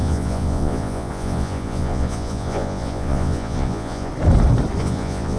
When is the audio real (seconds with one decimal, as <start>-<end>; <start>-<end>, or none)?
4.1-4.8